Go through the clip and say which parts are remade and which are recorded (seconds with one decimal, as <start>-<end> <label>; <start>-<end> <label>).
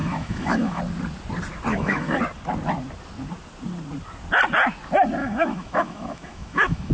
0.0-0.8 remade; 0.8-1.7 recorded; 1.7-2.2 remade; 2.2-5.2 recorded; 5.2-6.9 remade